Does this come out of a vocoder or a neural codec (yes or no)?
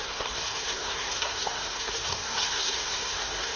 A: yes